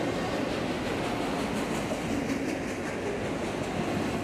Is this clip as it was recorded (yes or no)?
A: yes